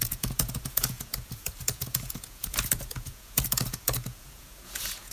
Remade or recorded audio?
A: remade